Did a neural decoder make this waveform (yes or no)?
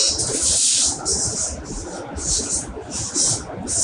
no